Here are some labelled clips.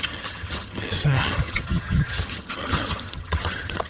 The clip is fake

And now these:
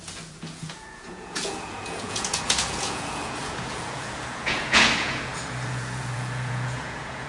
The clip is fake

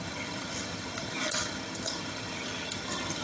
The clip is fake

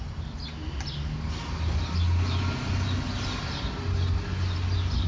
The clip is real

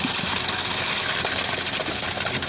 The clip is real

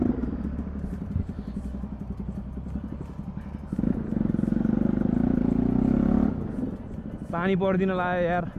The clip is real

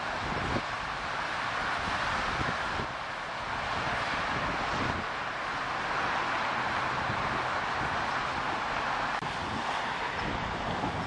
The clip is real